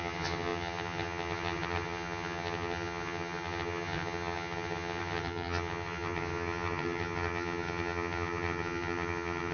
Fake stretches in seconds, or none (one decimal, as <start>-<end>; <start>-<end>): 0.0-9.5